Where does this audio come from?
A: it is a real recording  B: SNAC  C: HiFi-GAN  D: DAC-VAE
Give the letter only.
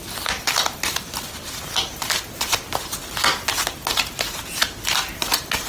A